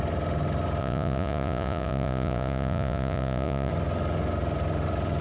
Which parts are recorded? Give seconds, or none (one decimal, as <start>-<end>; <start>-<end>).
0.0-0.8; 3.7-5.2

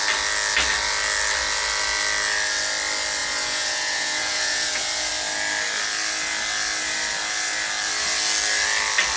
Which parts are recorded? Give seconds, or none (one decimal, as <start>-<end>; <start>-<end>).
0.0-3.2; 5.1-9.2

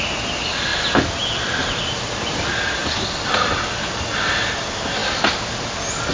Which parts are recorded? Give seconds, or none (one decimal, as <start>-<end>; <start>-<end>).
0.0-6.1